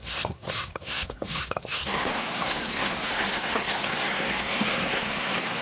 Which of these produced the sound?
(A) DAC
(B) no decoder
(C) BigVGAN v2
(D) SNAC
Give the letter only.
D